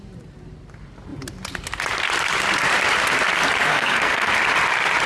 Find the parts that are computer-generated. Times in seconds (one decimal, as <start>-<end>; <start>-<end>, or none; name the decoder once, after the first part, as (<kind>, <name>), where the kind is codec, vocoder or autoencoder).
3.7-4.3 (codec, SNAC)